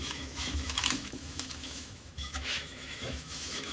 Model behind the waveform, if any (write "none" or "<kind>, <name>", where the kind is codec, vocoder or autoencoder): autoencoder, DAC-VAE